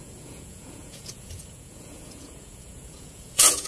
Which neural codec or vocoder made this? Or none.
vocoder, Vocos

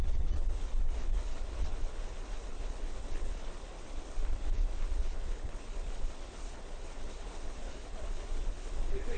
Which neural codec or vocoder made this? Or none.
codec, HILCodec